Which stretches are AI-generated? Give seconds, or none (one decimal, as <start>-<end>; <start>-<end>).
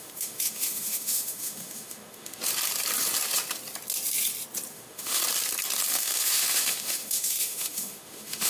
0.0-2.4; 4.7-5.2; 5.9-8.5